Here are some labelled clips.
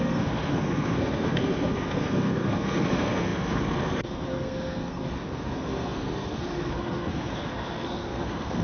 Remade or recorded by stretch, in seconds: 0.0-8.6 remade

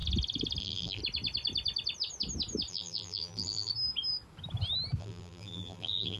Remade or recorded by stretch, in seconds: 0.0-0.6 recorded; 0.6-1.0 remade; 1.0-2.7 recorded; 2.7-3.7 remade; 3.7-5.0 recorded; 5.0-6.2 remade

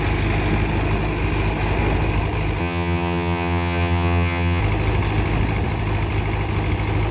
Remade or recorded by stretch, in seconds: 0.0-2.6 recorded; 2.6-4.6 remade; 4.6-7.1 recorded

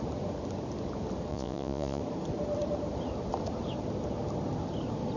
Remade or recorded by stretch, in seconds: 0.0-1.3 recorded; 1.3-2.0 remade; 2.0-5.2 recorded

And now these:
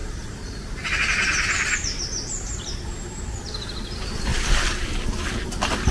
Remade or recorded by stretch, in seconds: 0.0-3.2 remade; 3.2-4.3 recorded; 4.3-4.9 remade; 4.9-5.9 recorded

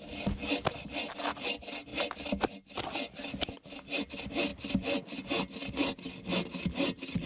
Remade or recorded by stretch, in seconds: 0.0-7.3 recorded

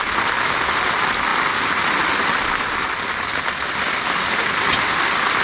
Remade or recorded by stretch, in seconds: 0.0-5.4 recorded

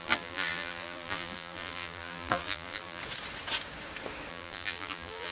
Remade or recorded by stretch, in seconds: 0.0-3.0 remade; 3.0-4.3 recorded; 4.3-5.3 remade